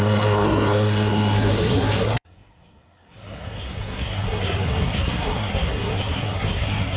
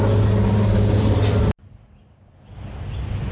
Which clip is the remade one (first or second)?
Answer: first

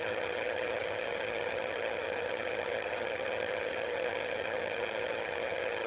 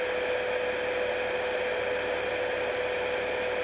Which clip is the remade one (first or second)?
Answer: first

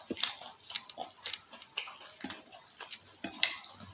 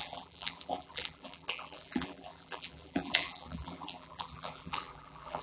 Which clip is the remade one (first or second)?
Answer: second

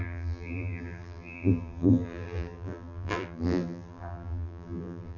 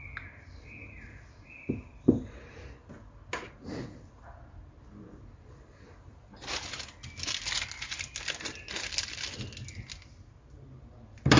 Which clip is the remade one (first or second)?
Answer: first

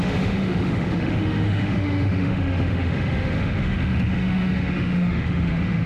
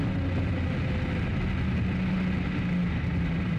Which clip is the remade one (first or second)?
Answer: first